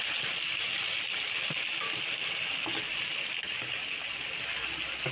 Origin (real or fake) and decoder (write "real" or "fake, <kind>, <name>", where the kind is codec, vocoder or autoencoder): real